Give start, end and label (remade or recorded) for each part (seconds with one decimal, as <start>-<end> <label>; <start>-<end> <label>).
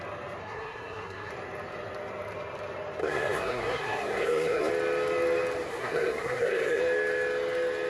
0.0-0.4 recorded; 0.4-1.3 remade; 1.3-3.0 recorded; 3.0-4.7 remade; 4.7-5.7 recorded; 5.7-6.8 remade; 6.8-7.9 recorded